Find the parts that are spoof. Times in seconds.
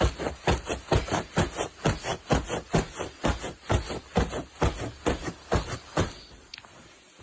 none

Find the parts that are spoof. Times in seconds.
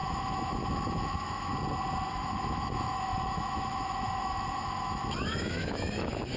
0.0-1.5 (autoencoder, DAC-VAE); 2.1-6.4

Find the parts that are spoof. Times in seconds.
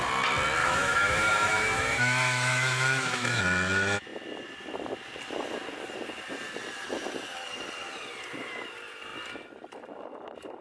0.6-3.4 (autoencoder, DAC-VAE)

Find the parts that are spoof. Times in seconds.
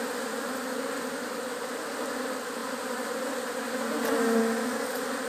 none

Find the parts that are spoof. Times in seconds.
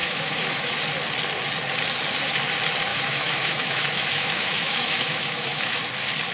0.0-0.7 (autoencoder, DAC-VAE); 2.9-5.8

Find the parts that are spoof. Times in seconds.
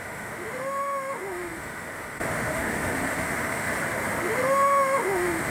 0.0-3.7 (autoencoder, DAC-VAE); 4.2-5.5